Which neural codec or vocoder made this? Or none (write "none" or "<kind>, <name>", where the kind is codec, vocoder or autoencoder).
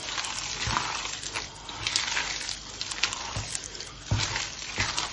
vocoder, BigVGAN v2